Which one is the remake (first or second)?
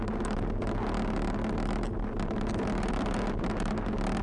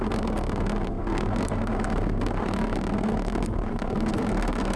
second